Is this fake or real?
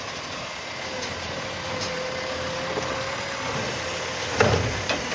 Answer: real